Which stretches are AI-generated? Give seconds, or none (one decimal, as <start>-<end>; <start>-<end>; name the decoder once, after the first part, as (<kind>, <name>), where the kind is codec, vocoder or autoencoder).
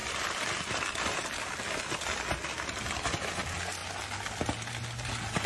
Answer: 0.0-2.3 (vocoder, BigVGAN v2)